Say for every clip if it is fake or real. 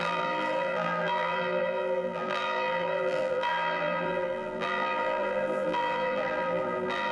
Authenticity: fake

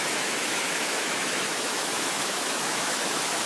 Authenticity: fake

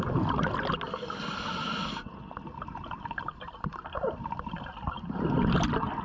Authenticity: real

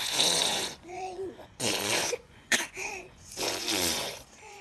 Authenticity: fake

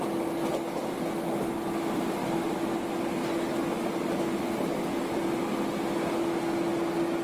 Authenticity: real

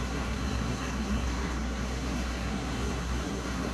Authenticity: fake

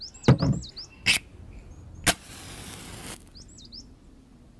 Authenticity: real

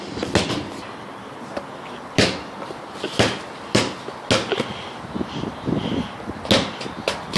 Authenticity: real